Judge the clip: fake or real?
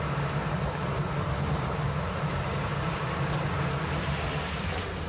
fake